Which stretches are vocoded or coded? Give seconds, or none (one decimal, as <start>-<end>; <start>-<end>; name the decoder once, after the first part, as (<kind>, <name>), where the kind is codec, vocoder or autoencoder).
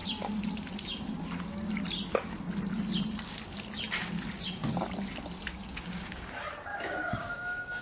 5.5-6.3 (codec, DAC); 6.7-7.8